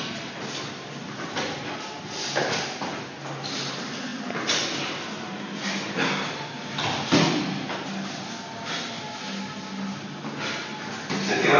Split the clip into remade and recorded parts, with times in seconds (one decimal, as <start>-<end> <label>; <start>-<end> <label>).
0.0-11.6 recorded